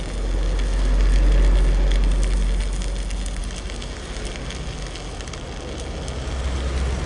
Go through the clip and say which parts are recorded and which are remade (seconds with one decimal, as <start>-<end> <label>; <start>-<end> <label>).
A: 0.0-7.1 recorded